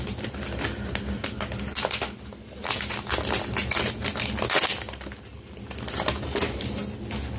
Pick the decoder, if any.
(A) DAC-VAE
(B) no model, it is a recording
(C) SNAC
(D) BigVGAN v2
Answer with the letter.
B